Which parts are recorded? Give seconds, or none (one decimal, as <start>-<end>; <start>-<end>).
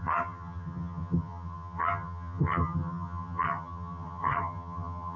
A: none